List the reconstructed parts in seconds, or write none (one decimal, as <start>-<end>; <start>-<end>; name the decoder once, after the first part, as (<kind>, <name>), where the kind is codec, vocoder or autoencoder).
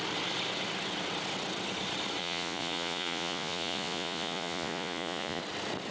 2.2-5.4 (vocoder, Vocos)